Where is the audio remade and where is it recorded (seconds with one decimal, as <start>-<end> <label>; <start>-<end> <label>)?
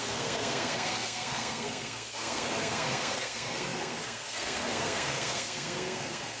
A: 0.0-6.4 remade